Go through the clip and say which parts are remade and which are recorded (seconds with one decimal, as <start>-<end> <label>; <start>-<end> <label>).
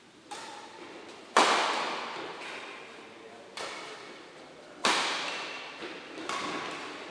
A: 0.0-4.8 recorded; 4.8-5.8 remade; 5.8-7.1 recorded